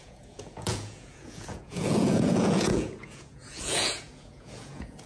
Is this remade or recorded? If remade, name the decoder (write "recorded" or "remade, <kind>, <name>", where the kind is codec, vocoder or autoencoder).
remade, vocoder, Vocos